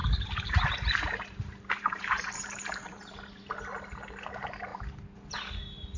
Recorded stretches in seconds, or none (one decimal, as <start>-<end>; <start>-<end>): 3.2-6.0